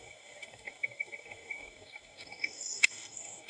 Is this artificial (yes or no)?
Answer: yes